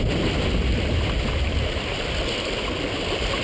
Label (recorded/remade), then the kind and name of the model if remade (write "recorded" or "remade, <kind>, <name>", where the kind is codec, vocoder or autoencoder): recorded